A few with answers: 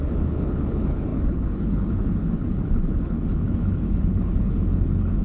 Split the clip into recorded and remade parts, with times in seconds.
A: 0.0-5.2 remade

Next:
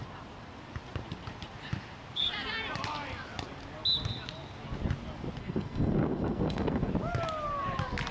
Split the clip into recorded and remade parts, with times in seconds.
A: 0.0-5.4 recorded; 5.4-6.9 remade; 6.9-8.1 recorded

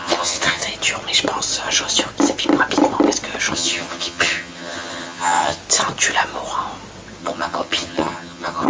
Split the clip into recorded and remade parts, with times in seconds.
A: 0.0-0.6 remade; 0.6-3.5 recorded; 3.5-5.6 remade; 5.6-7.2 recorded; 7.2-8.7 remade